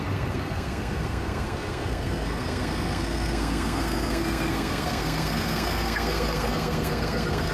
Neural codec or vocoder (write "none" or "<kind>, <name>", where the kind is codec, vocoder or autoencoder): codec, SNAC